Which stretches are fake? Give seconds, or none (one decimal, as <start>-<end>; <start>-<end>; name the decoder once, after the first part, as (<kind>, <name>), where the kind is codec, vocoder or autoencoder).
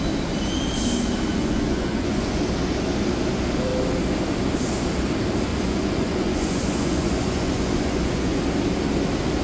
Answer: 1.3-2.4 (vocoder, Vocos); 5.5-8.4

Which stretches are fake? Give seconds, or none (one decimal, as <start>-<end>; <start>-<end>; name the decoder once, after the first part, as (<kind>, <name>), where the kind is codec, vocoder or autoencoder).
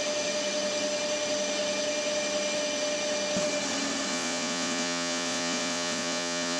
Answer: 4.1-6.6 (vocoder, Vocos)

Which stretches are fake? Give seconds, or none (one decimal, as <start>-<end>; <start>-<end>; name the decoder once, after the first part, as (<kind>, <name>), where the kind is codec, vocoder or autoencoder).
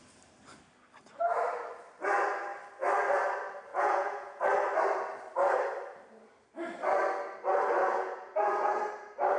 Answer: 3.7-4.4 (vocoder, Vocos); 7.8-8.9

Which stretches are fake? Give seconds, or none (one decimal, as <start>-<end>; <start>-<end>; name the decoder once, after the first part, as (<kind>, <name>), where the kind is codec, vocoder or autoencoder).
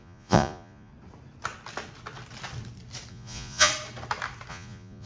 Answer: 0.0-0.9 (vocoder, Vocos); 3.1-3.7; 4.5-5.1